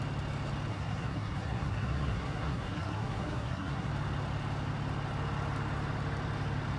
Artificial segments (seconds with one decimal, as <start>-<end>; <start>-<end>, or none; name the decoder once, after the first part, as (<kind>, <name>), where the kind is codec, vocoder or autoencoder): 0.7-3.9 (codec, SNAC)